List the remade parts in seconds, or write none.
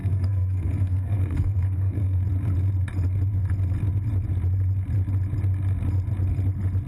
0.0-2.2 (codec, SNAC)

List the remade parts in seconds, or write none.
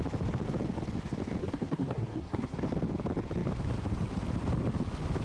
1.4-2.6 (codec, SNAC)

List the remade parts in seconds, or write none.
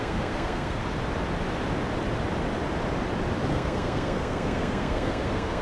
0.0-0.8 (codec, SNAC); 3.5-5.6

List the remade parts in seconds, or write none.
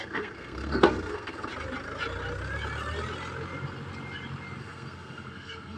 0.0-1.5 (codec, SNAC); 4.6-5.8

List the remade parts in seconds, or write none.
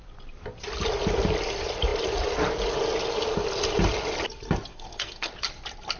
4.7-5.3 (codec, SNAC)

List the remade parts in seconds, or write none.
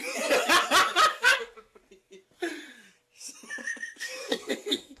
1.1-1.8 (codec, SNAC); 3.6-5.0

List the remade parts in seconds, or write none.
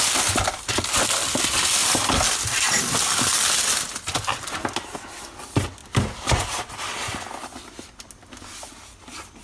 none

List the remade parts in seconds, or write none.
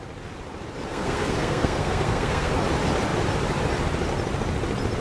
0.9-2.5 (codec, SNAC)